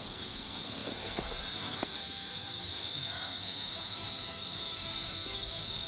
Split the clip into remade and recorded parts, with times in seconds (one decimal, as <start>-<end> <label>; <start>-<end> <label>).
0.0-5.9 remade